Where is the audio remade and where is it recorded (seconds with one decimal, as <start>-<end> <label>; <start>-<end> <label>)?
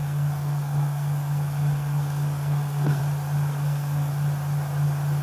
0.0-3.0 remade; 3.0-3.5 recorded; 3.5-4.1 remade; 4.1-5.2 recorded